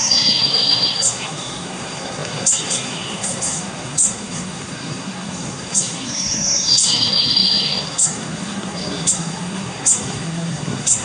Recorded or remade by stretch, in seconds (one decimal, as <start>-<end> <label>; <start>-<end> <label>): 0.0-11.0 remade